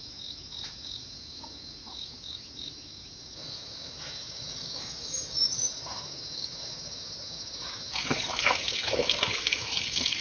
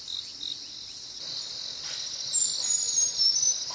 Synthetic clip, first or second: first